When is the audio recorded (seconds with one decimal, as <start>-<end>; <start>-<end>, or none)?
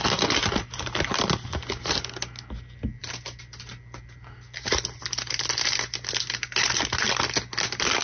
0.0-8.0